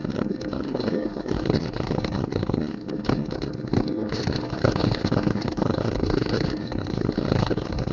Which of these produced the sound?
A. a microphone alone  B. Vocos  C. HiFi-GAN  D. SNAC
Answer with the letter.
D